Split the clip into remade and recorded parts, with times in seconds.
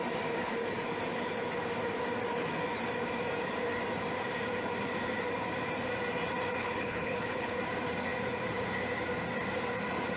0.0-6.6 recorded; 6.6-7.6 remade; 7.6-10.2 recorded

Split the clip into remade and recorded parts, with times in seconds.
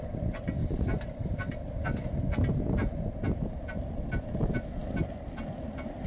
0.0-0.6 recorded; 0.6-1.7 remade; 1.7-2.8 recorded; 2.8-4.3 remade; 4.3-6.1 recorded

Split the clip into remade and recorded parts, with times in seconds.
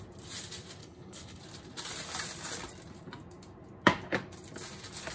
0.0-0.8 recorded; 0.8-1.4 remade; 1.4-5.1 recorded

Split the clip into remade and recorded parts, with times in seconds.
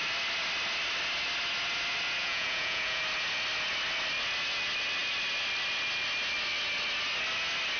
0.0-2.2 recorded; 2.2-3.0 remade; 3.0-7.8 recorded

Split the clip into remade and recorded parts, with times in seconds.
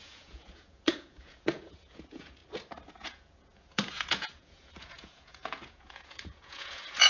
0.0-2.4 remade; 2.4-2.9 recorded; 2.9-7.1 remade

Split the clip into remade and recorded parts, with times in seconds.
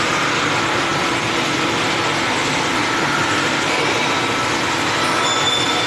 0.0-5.9 recorded